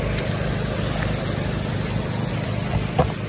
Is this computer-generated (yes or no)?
no